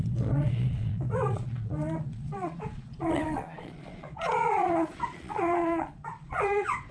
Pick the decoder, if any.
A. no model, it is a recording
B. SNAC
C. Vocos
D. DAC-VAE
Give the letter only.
C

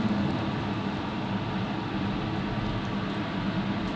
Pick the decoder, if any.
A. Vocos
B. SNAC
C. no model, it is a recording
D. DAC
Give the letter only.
C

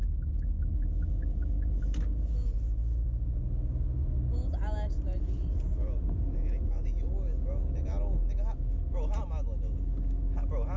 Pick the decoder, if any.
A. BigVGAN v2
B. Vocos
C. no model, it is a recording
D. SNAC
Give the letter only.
C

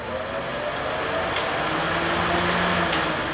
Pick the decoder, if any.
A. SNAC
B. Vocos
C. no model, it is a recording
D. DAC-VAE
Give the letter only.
C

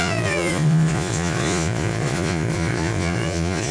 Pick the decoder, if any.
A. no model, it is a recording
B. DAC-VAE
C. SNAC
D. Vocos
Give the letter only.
D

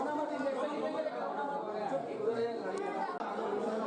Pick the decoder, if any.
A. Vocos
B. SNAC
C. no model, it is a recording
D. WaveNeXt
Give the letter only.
C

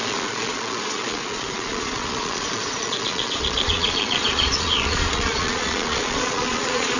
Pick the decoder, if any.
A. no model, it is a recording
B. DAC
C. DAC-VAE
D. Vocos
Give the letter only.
D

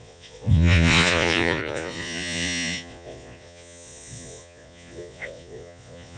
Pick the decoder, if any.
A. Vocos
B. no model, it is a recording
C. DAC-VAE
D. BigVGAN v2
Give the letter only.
A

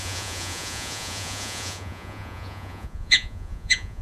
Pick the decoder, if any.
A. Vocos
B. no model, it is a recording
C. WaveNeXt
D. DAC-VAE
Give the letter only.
A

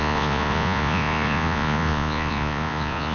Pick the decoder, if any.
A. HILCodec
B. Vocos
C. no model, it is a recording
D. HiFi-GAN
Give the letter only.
B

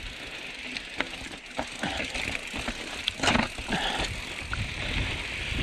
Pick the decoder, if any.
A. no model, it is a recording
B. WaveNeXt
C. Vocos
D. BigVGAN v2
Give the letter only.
A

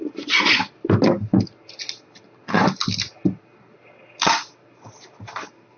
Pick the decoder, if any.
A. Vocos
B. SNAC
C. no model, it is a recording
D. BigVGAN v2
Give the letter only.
C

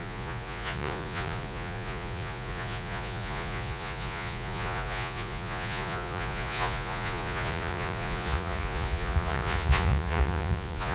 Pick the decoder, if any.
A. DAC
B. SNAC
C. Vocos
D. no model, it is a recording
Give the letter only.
C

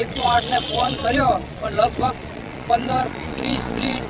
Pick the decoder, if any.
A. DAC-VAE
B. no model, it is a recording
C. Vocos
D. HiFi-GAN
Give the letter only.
C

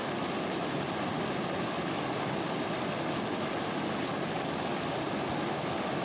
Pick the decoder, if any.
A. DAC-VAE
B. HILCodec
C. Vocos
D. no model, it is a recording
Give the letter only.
D